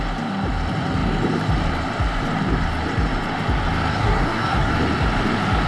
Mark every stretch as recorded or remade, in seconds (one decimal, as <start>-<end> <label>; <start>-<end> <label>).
0.0-3.9 recorded; 3.9-4.7 remade; 4.7-5.7 recorded